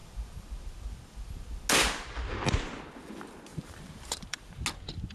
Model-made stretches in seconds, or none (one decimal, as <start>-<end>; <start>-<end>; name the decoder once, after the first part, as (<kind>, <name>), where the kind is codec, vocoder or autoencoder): 3.5-4.6 (vocoder, BigVGAN v2)